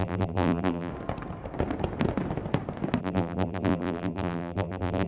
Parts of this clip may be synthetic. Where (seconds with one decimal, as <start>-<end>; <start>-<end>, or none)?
0.0-0.9; 3.0-5.1